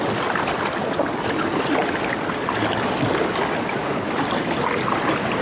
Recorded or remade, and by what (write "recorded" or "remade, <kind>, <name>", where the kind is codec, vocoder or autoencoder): recorded